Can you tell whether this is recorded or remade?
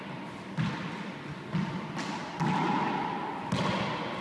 recorded